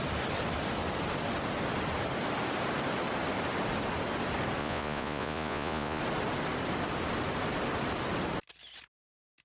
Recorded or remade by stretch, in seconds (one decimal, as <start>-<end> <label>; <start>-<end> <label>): 0.0-4.6 recorded; 4.6-6.0 remade; 6.0-9.4 recorded